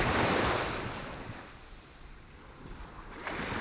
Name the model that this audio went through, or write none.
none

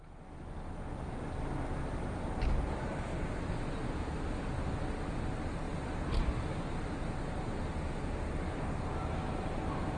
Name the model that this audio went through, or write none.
none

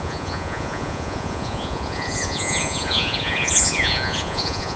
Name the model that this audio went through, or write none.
vocoder, Vocos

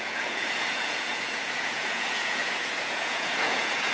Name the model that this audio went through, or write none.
vocoder, Vocos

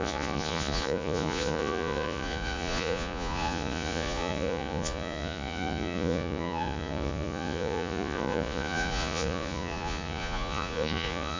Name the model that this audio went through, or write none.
vocoder, Vocos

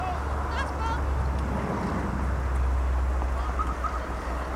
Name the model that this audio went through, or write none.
none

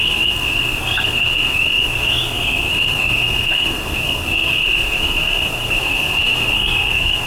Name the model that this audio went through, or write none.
codec, SNAC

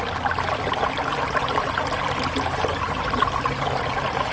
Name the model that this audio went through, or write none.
none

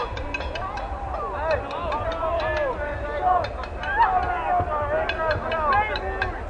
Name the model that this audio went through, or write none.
none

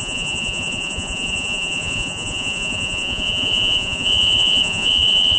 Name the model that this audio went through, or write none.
vocoder, Vocos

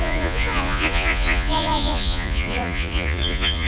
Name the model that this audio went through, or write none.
vocoder, Vocos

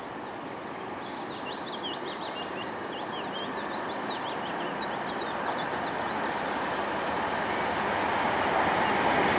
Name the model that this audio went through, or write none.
none